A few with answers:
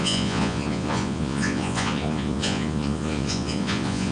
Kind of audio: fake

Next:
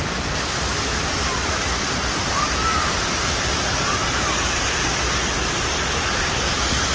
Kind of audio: real